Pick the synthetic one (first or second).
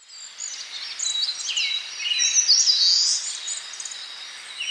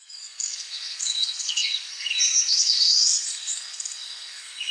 second